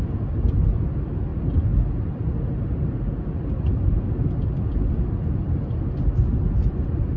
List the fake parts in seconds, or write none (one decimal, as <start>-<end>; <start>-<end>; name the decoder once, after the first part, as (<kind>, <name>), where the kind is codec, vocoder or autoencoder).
none